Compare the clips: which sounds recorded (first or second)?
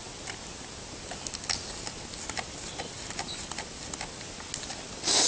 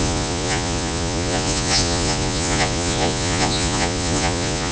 first